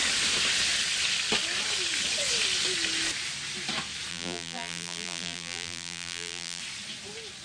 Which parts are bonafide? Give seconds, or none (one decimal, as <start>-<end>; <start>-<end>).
0.0-4.1; 6.6-7.4